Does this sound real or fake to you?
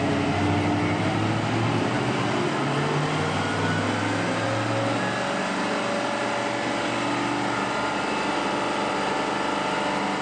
real